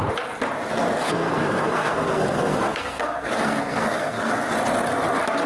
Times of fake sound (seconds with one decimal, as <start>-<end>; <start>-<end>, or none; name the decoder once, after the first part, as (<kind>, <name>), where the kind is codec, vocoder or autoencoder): 1.0-4.3 (codec, SNAC)